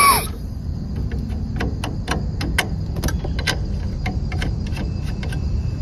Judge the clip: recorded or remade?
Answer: recorded